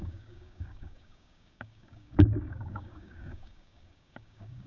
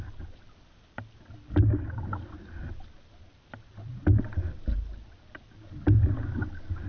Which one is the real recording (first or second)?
second